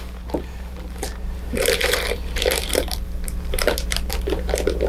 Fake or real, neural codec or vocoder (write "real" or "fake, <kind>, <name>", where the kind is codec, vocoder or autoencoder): fake, vocoder, BigVGAN v2